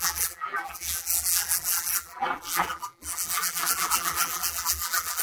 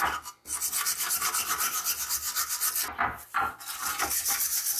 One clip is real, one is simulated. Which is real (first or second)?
second